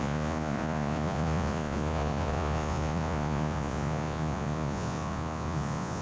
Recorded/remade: remade